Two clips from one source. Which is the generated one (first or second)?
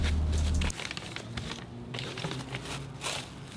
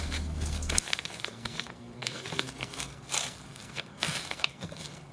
second